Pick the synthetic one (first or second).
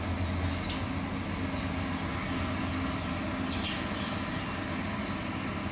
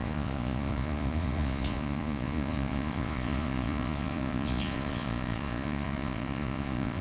second